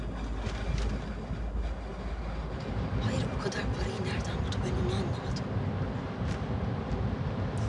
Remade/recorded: recorded